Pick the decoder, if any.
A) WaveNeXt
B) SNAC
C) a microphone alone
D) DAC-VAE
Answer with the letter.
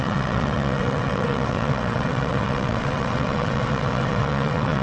A